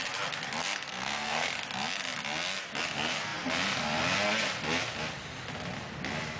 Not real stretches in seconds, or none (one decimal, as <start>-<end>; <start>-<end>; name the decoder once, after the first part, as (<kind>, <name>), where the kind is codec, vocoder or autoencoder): 0.6-1.5 (codec, SNAC)